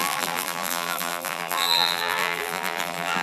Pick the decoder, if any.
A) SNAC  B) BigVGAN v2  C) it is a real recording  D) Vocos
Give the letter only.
B